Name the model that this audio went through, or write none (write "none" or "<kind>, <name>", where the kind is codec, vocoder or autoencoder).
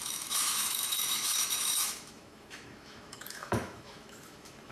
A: autoencoder, DAC-VAE